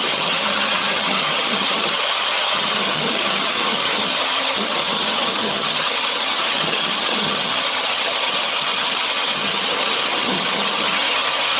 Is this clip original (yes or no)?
no